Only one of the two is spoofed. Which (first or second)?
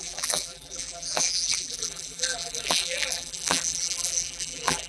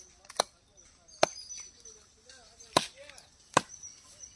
first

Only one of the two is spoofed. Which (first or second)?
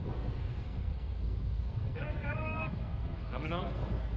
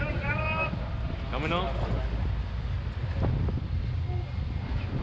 first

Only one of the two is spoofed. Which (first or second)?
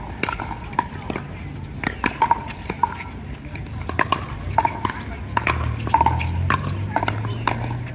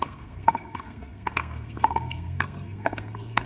second